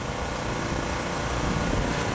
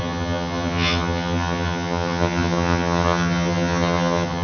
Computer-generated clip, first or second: second